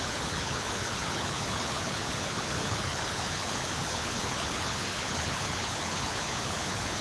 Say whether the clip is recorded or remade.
remade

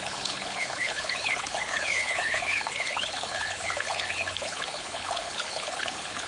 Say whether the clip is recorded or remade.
remade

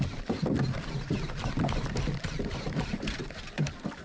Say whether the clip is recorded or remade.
recorded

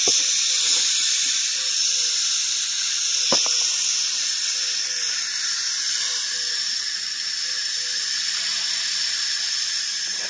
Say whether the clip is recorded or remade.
recorded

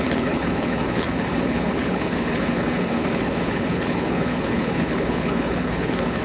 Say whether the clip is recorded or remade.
remade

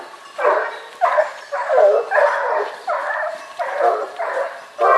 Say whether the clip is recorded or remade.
recorded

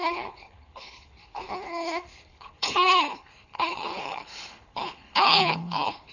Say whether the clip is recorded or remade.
remade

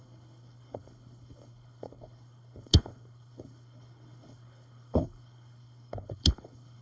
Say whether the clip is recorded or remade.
remade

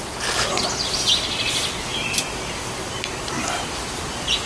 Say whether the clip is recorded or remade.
recorded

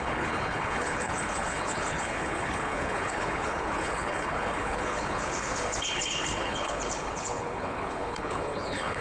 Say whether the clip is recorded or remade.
remade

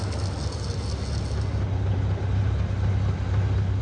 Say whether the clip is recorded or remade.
recorded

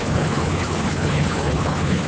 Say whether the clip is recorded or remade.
remade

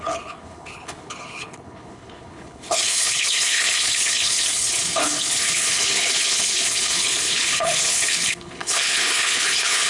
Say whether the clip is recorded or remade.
remade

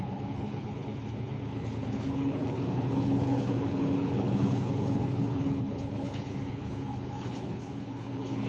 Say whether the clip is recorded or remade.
remade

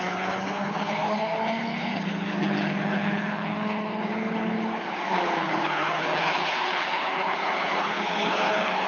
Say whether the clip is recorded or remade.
remade